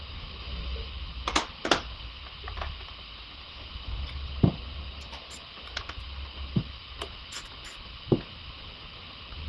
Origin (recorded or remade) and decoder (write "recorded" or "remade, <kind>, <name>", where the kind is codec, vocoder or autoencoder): recorded